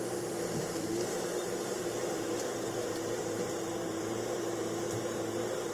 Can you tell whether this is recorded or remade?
remade